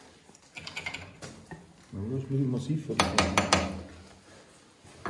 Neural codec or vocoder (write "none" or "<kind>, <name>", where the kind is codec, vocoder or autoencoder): none